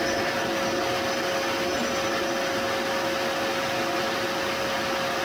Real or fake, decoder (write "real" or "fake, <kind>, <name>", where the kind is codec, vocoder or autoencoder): real